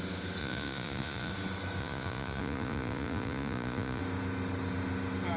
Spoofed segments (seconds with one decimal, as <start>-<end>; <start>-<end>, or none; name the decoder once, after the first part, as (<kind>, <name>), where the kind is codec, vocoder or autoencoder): 0.4-1.3 (vocoder, Vocos); 1.8-4.0